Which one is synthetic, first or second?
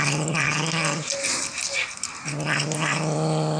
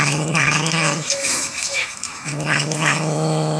second